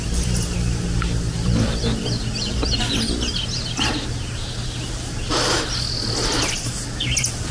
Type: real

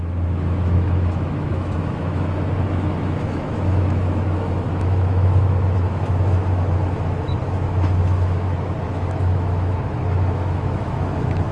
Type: fake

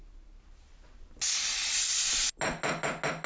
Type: real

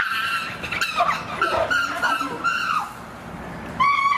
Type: real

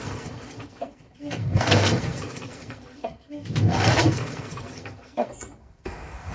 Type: fake